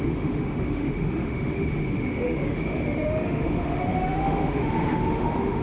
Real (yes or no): no